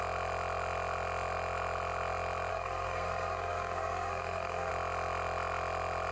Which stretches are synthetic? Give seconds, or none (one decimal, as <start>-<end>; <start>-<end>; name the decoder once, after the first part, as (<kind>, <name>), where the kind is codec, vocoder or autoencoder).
2.5-4.7 (codec, SNAC)